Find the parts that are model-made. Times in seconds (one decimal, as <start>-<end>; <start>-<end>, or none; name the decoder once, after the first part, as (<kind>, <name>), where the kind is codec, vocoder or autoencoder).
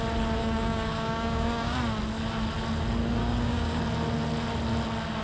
0.4-1.8 (codec, DAC); 3.2-3.8